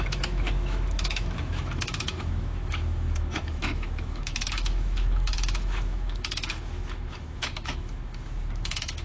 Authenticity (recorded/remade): remade